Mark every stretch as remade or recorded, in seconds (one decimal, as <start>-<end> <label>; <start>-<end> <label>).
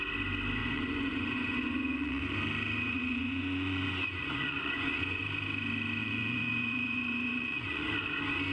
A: 0.0-0.6 recorded; 0.6-2.2 remade; 2.2-3.1 recorded; 3.1-5.2 remade; 5.2-6.0 recorded; 6.0-7.9 remade; 7.9-8.5 recorded